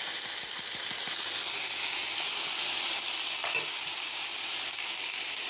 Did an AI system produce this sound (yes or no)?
yes